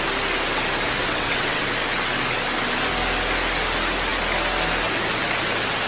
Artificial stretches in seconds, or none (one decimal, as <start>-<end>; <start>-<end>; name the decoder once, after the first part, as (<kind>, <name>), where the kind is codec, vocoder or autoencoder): 1.0-1.6 (vocoder, WaveNeXt)